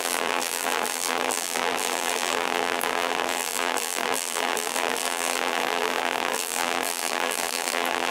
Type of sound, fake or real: fake